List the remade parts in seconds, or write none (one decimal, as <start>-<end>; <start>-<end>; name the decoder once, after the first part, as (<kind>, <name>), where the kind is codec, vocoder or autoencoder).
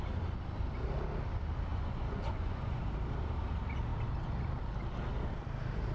1.7-2.8 (vocoder, Vocos)